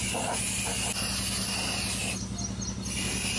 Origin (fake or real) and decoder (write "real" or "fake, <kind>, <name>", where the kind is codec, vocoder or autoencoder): real